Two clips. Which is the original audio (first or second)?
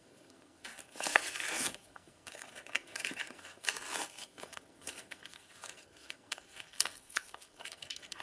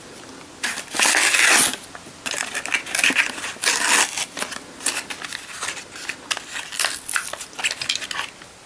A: second